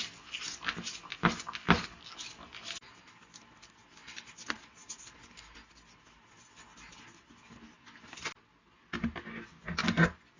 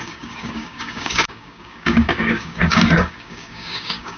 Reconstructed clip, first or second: second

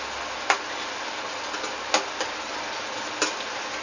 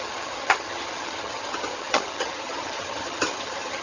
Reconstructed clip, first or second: second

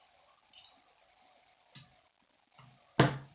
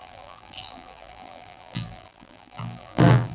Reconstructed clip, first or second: second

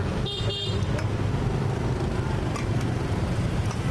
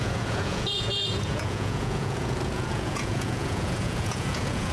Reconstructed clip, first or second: second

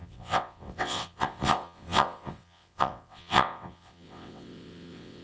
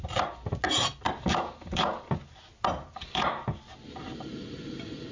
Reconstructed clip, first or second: first